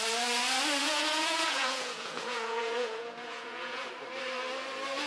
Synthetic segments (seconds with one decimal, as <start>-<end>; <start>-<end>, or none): 0.8-3.9

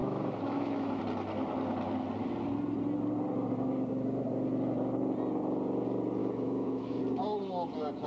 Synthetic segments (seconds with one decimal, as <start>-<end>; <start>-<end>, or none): 0.0-1.0; 6.2-7.0

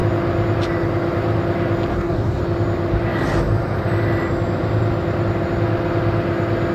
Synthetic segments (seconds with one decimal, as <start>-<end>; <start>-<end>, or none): 1.9-2.4

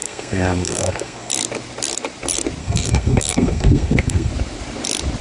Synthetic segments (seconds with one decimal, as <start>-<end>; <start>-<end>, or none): 0.0-1.3; 2.6-4.3

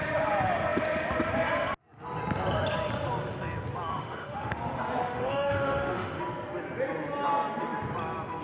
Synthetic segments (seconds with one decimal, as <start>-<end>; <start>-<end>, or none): 3.9-4.6; 5.0-6.2

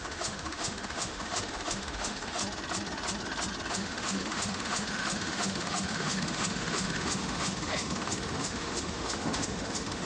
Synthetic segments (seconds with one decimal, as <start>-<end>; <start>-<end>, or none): 0.0-2.4; 3.7-10.0

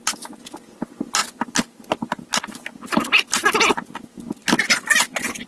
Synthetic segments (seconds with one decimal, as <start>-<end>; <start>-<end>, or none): none

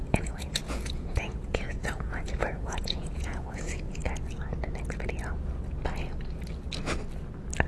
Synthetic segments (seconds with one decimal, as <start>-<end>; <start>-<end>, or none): 0.0-4.0